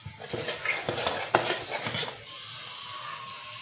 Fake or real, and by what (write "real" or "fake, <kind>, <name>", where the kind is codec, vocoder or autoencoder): real